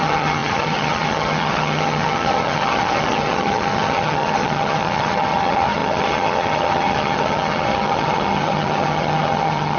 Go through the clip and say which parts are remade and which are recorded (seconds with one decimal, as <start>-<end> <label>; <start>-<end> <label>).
0.0-9.8 remade